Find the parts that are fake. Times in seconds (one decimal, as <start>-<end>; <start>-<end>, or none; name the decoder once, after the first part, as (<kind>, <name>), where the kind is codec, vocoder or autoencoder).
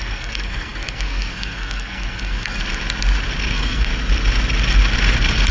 0.0-2.6 (codec, SNAC); 3.5-3.9